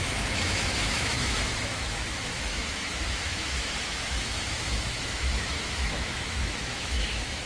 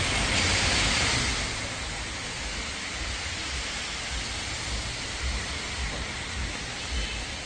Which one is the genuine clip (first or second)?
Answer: second